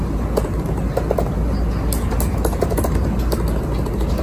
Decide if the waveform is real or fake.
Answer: real